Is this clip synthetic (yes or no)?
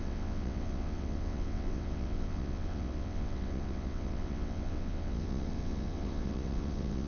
yes